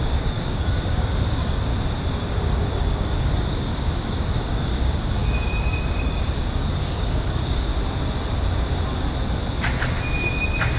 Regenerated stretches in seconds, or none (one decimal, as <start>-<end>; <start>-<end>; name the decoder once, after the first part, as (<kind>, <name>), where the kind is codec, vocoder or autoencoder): 0.0-1.7 (codec, DAC); 2.3-7.7

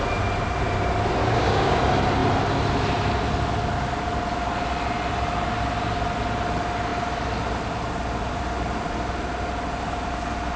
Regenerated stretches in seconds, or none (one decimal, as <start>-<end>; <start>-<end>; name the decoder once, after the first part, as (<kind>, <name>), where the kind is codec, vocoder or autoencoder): 1.2-1.8 (codec, DAC)

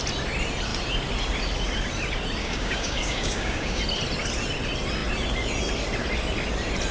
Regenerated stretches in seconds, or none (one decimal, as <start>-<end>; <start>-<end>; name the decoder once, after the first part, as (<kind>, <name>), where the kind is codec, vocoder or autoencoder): 2.4-3.8 (codec, DAC)

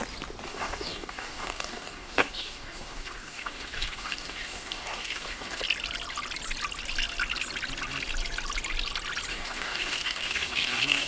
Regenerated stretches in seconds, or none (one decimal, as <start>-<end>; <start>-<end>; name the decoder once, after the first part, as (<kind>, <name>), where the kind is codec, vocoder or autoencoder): 0.5-5.6 (codec, DAC); 9.3-11.1

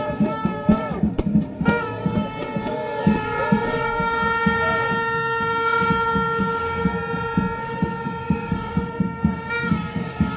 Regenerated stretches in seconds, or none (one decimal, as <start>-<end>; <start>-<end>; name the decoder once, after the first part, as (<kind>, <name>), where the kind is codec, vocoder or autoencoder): 0.0-6.9 (codec, DAC); 7.6-10.4

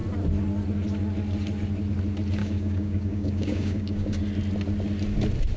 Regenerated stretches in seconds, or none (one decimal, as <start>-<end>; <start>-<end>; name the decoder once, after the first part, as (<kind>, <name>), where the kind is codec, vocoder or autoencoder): 2.4-4.2 (codec, DAC)

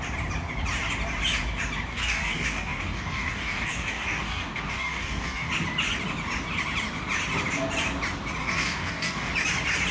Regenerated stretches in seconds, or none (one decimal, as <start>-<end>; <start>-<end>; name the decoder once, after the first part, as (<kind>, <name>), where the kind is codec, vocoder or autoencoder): 1.9-5.5 (codec, DAC); 8.4-9.3